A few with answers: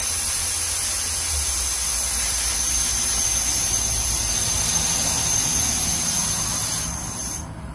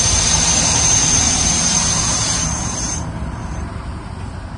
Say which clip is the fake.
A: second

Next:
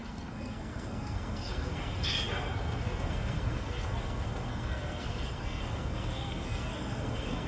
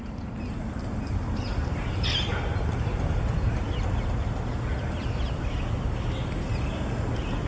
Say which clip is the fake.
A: first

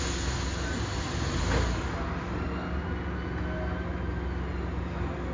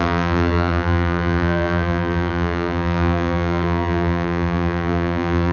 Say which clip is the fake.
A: second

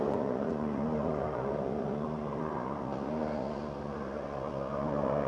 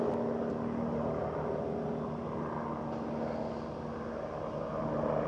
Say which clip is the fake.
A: first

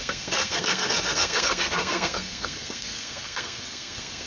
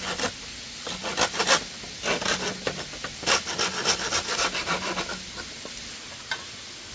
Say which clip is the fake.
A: first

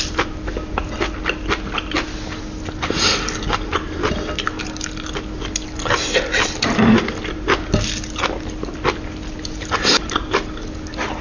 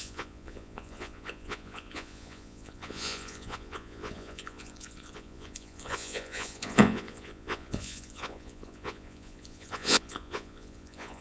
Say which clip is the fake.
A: second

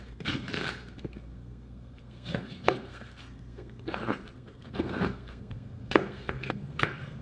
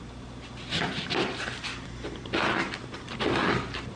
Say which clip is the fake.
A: first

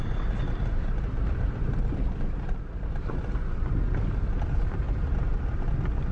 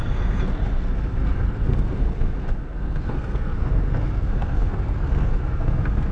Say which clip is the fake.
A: second